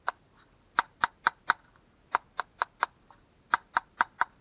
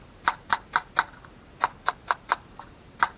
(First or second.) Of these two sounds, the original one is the first